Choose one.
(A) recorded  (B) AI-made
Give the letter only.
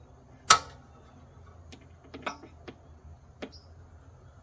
A